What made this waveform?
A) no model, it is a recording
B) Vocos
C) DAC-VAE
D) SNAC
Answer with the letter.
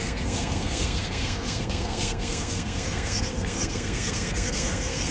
D